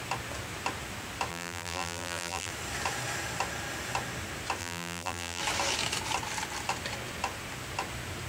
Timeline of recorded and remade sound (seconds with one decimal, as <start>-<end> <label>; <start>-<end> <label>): 0.0-1.3 recorded; 1.3-2.5 remade; 2.5-4.6 recorded; 4.6-5.4 remade; 5.4-8.3 recorded